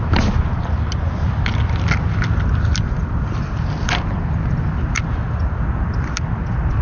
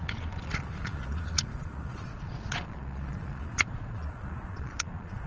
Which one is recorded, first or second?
first